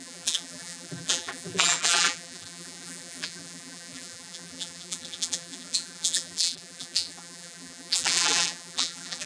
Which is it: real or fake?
fake